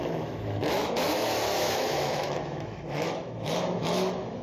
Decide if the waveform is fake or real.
fake